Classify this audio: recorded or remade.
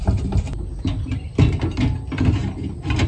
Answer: recorded